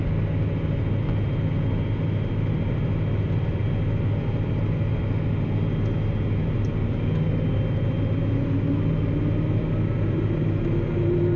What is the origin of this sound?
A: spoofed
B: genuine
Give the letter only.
B